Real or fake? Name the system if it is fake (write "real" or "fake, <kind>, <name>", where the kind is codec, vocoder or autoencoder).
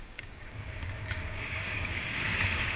fake, codec, DAC